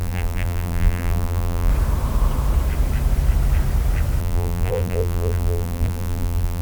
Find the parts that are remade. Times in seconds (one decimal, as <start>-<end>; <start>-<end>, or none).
0.0-1.7; 4.2-6.6